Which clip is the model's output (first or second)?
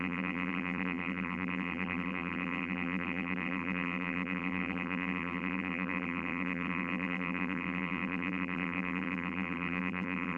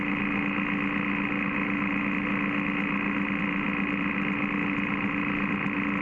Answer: first